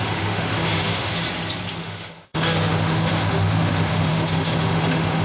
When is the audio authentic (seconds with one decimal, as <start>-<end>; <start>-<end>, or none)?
1.1-1.8